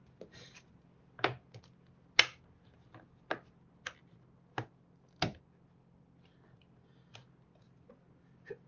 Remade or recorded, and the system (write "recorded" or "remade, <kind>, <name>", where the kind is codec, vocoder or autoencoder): recorded